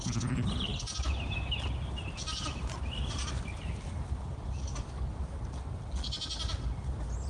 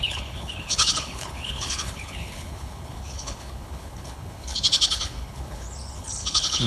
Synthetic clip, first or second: second